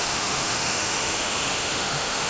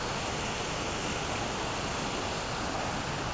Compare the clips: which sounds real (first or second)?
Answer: second